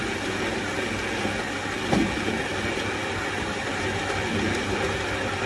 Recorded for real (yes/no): yes